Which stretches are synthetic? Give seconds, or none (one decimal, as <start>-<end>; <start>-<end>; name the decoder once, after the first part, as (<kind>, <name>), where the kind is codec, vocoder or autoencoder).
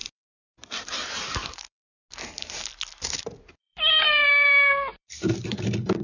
3.6-6.0 (vocoder, BigVGAN v2)